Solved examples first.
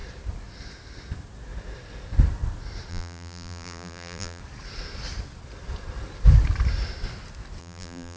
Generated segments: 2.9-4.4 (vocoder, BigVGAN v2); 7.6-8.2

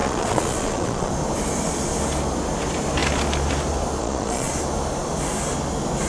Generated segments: 0.0-1.1 (vocoder, Vocos); 4.0-4.5

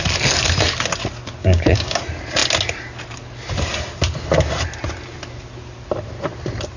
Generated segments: 1.4-2.0 (codec, DAC)

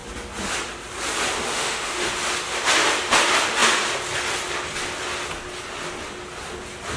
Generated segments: 1.5-2.1 (autoencoder, DAC-VAE)

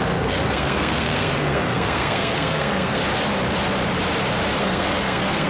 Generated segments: 0.0-3.0 (codec, SNAC); 4.6-5.5

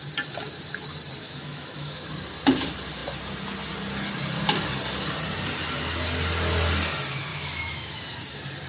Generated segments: 1.2-2.0 (autoencoder, DAC-VAE); 7.3-8.0